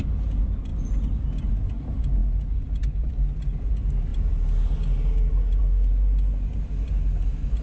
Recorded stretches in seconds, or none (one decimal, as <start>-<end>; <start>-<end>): 0.0-7.6